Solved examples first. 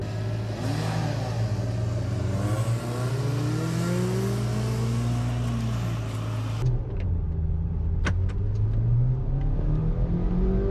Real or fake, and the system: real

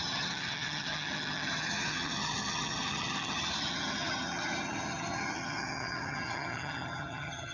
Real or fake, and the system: fake, vocoder, HiFi-GAN